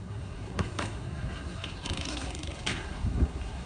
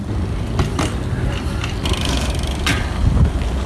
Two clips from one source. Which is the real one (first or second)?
second